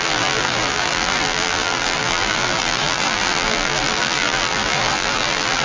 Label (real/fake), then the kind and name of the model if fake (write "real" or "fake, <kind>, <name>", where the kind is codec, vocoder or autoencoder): fake, vocoder, BigVGAN v2